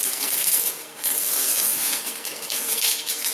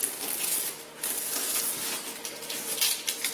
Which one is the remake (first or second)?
first